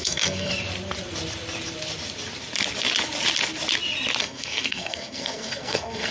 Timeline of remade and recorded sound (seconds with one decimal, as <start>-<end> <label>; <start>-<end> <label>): 0.0-0.5 remade; 0.5-4.2 recorded; 4.2-6.1 remade